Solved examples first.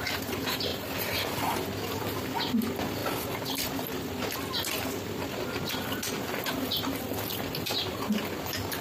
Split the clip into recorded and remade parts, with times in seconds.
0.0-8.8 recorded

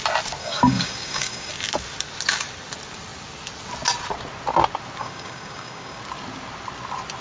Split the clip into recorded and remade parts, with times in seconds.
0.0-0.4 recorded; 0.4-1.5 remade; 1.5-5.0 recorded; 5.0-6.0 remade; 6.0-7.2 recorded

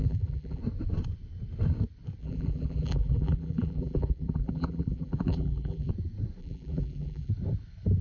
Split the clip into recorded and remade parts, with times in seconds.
0.0-0.6 remade; 0.6-2.2 recorded; 2.2-5.9 remade; 5.9-6.4 recorded; 6.4-7.3 remade; 7.3-8.0 recorded